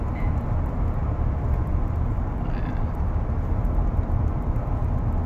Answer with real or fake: real